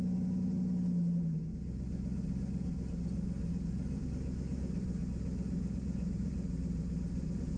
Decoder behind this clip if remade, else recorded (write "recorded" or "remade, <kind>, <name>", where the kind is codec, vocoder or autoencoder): recorded